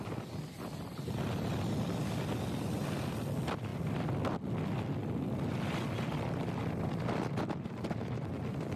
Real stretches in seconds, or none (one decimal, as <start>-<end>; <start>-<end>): 0.0-8.8